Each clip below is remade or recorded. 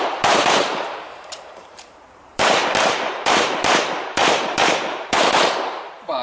remade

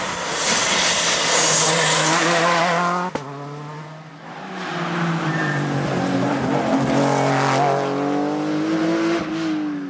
recorded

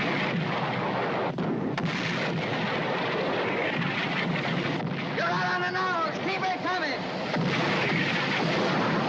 recorded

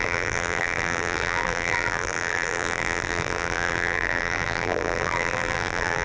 remade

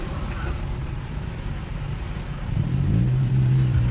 remade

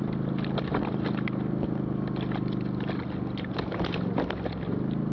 recorded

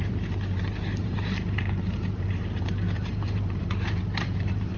remade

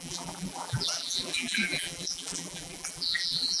remade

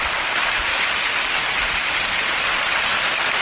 remade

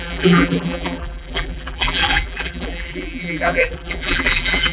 remade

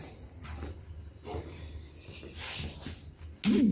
recorded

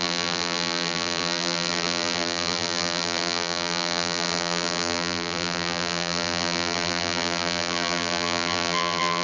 remade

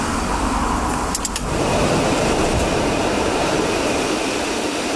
remade